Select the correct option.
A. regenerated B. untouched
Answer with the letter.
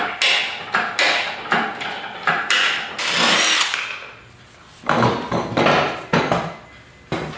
B